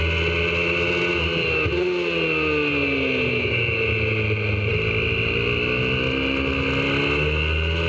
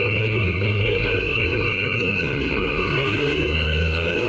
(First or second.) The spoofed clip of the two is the second